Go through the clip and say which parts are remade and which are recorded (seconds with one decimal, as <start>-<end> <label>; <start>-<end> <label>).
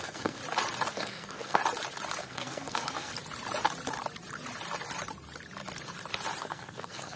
0.0-0.4 remade; 0.4-0.9 recorded; 0.9-1.6 remade; 1.6-2.2 recorded; 2.2-3.1 remade; 3.1-6.4 recorded; 6.4-7.2 remade